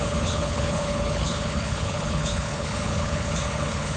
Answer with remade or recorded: remade